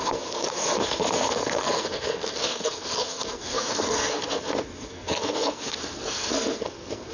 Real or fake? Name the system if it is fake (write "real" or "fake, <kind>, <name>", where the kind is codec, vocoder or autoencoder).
fake, codec, SNAC